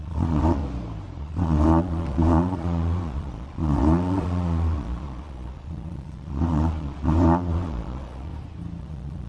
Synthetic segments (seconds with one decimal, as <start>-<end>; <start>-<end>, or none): 0.0-0.6; 1.2-8.3; 8.8-9.3